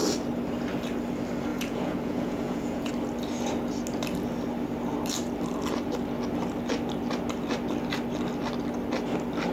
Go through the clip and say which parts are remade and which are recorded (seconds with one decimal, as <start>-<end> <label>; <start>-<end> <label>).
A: 0.0-1.5 recorded; 1.5-2.9 remade; 2.9-9.5 recorded

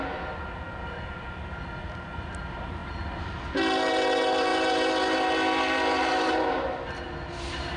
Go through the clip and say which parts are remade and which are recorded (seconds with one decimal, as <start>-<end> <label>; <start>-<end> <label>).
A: 0.0-7.8 recorded